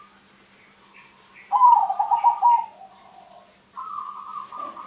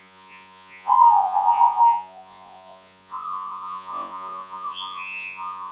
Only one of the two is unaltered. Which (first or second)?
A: first